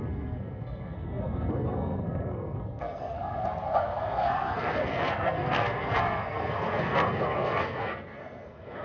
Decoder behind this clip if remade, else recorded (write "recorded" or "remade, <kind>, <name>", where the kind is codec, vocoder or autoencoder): remade, codec, SNAC